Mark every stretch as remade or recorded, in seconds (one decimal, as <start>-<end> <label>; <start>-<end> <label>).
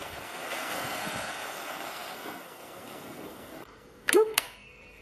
0.0-5.0 remade